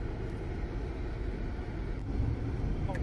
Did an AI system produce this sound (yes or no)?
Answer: no